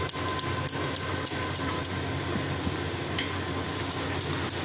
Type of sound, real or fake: real